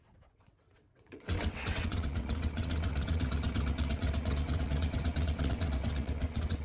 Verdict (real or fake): fake